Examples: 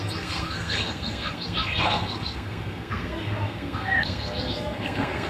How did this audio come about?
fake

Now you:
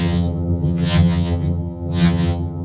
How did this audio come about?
fake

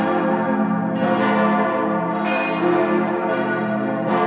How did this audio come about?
real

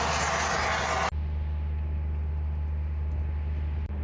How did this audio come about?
real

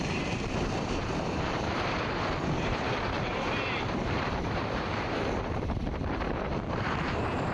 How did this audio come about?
fake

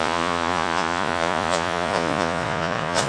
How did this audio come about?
fake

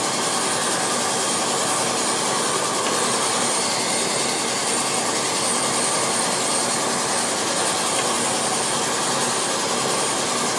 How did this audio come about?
real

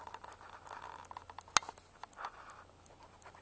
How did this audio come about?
real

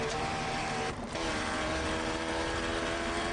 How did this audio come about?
fake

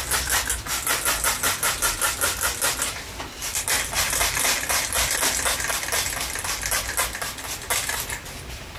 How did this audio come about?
real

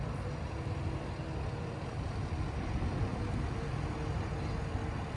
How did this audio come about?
real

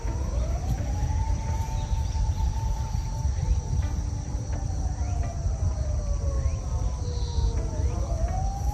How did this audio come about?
real